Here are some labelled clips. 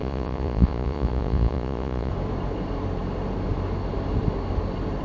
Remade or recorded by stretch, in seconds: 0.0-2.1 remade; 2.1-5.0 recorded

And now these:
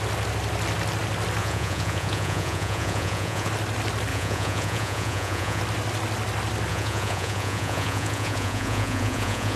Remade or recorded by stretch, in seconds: 0.0-1.4 recorded; 1.4-3.5 remade; 3.5-4.1 recorded; 4.1-5.6 remade; 5.6-6.7 recorded; 6.7-9.6 remade

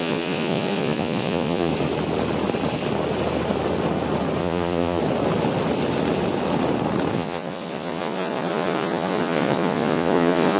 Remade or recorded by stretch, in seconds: 0.0-1.7 remade; 1.7-4.4 recorded; 4.4-5.0 remade; 5.0-7.1 recorded; 7.1-10.6 remade

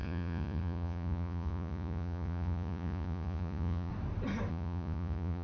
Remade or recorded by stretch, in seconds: 0.0-3.9 remade; 3.9-4.5 recorded; 4.5-5.4 remade

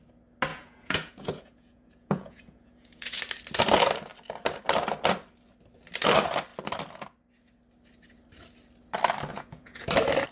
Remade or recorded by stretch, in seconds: 0.0-0.5 recorded; 0.5-3.2 remade; 3.2-9.3 recorded; 9.3-9.9 remade; 9.9-10.3 recorded

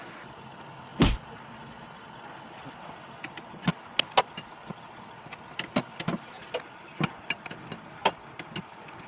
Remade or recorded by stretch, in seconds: 0.0-9.1 recorded